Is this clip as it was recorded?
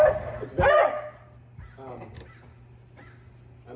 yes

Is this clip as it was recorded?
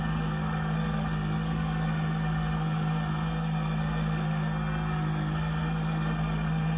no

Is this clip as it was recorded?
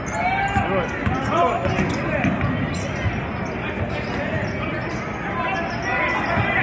yes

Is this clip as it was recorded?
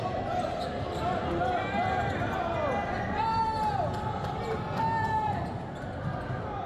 yes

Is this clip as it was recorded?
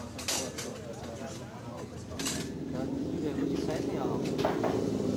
yes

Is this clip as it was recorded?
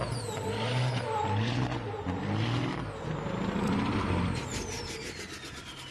yes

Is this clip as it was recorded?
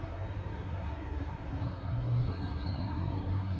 no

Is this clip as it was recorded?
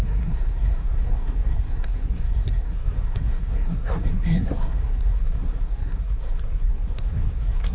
no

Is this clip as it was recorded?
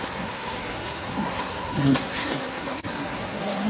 no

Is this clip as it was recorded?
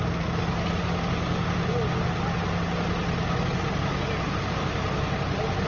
yes